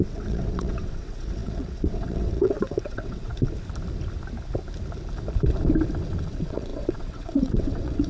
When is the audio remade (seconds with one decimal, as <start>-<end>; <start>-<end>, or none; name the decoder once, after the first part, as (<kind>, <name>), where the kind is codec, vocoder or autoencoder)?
0.0-3.3 (vocoder, WaveNeXt); 6.3-8.1